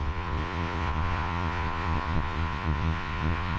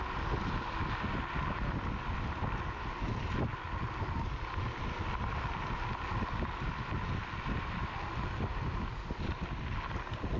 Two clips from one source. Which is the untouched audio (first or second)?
second